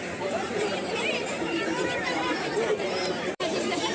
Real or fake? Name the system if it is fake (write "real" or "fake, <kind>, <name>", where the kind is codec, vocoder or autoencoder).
fake, vocoder, BigVGAN v2